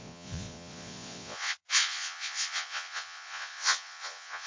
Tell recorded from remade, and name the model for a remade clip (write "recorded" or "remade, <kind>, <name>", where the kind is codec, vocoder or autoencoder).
remade, vocoder, Vocos